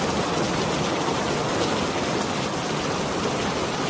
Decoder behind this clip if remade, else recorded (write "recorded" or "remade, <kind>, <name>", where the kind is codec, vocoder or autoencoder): recorded